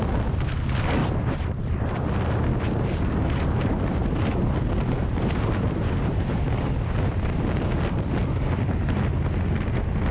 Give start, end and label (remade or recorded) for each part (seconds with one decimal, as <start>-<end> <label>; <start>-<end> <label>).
0.0-1.0 recorded; 1.0-1.9 remade; 1.9-2.5 recorded; 2.5-6.7 remade; 6.7-10.1 recorded